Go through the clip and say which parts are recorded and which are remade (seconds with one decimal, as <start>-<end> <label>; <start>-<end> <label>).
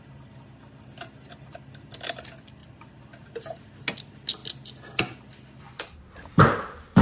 0.0-2.6 recorded; 2.6-3.6 remade; 3.6-7.0 recorded